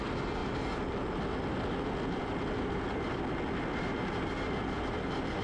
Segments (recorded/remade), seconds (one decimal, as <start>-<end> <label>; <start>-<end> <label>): 0.0-5.4 recorded